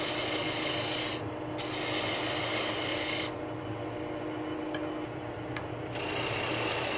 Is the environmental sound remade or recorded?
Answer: recorded